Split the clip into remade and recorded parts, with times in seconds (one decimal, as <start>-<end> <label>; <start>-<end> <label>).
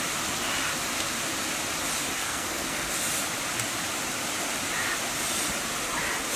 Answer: 0.0-2.2 recorded; 2.2-2.9 remade; 2.9-6.4 recorded